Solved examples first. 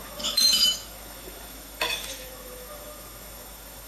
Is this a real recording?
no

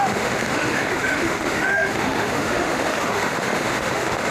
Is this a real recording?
no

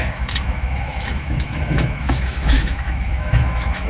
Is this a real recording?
no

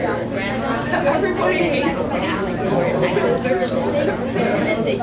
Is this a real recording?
yes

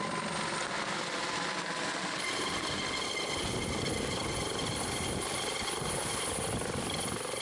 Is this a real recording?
yes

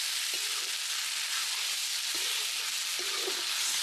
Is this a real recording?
yes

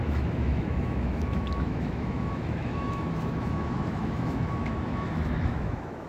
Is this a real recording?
no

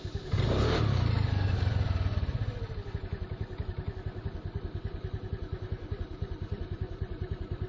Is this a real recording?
yes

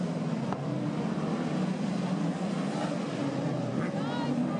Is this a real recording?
yes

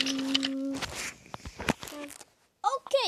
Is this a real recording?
yes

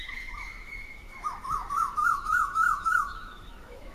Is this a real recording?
no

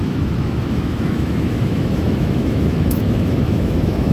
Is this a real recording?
no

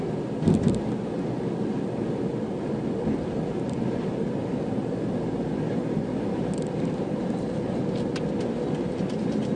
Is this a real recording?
yes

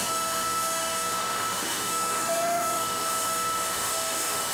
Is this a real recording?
no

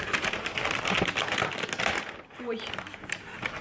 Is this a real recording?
yes